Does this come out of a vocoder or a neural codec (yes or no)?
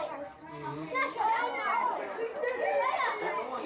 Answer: no